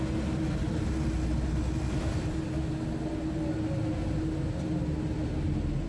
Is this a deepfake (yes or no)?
no